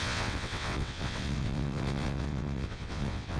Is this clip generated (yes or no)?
yes